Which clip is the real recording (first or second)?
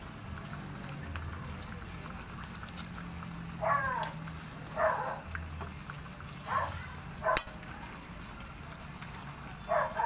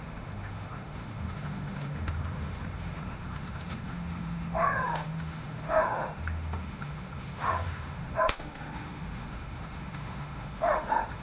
first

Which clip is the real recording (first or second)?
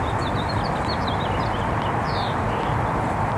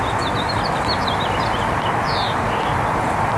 second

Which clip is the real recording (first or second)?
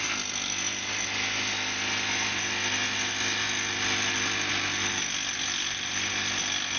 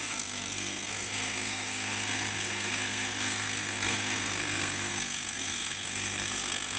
first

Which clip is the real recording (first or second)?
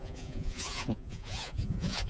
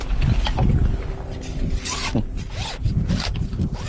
second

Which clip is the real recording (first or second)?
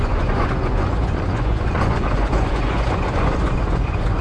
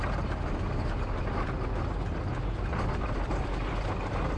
second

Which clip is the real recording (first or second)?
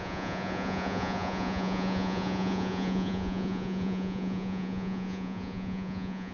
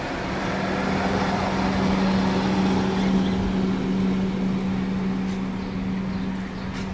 second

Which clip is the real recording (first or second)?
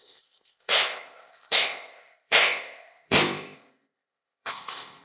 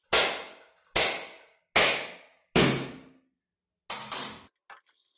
second